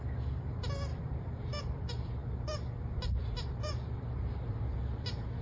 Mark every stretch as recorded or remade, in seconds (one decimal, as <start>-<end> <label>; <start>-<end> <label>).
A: 0.0-0.9 recorded; 0.9-1.8 remade; 1.8-2.2 recorded; 2.2-5.4 remade